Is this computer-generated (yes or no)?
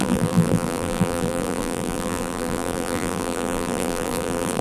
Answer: yes